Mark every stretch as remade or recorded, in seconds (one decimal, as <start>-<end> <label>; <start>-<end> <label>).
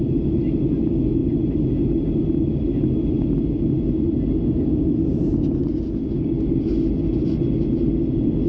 0.0-8.5 recorded